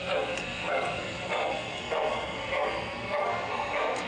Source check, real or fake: fake